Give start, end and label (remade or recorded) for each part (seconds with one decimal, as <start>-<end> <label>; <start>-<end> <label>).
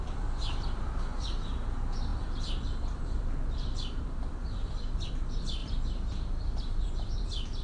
0.0-7.6 remade